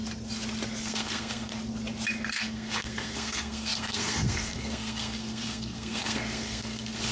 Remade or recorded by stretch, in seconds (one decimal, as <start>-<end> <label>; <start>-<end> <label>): 0.0-0.8 recorded; 0.8-1.5 remade; 1.5-2.3 recorded; 2.3-7.1 remade